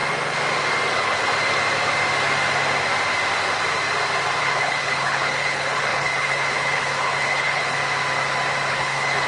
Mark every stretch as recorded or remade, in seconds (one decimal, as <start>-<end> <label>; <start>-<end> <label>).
0.0-0.9 recorded; 0.9-1.3 remade; 1.3-4.4 recorded; 4.4-7.8 remade; 7.8-8.7 recorded; 8.7-9.3 remade